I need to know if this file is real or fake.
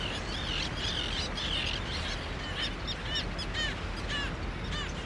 real